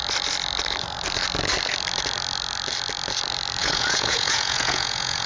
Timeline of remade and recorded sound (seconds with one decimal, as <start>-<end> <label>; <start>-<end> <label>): 0.0-3.6 recorded; 3.6-5.3 remade